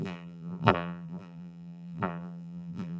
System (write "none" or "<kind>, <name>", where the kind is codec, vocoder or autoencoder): vocoder, BigVGAN v2